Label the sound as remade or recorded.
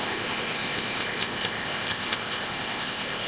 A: remade